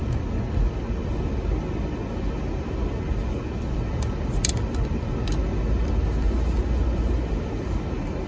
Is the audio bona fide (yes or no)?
yes